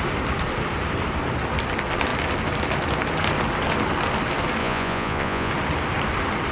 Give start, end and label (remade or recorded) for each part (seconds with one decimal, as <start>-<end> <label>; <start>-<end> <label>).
0.0-4.6 recorded; 4.6-5.5 remade; 5.5-6.5 recorded